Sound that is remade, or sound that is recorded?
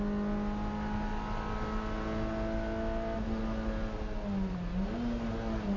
recorded